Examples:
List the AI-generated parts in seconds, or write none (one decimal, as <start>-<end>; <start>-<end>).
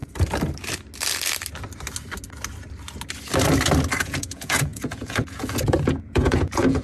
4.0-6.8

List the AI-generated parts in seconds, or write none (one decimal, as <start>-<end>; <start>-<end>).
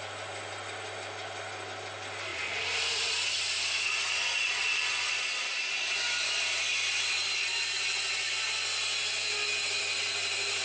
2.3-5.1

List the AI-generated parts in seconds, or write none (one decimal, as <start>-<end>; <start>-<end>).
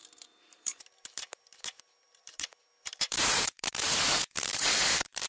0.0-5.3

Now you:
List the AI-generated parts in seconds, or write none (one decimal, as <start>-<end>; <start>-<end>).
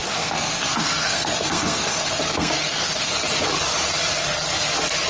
0.0-3.1